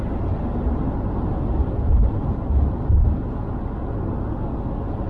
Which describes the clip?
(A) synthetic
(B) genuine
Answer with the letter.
B